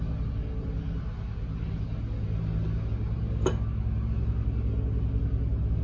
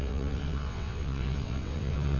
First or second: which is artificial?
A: second